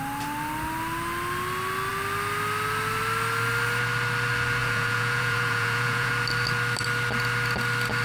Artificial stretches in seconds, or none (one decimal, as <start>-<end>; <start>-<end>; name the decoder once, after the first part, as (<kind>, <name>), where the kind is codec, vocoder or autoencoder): 4.6-6.1 (vocoder, Vocos)